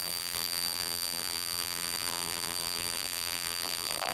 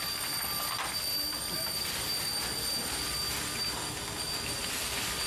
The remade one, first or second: first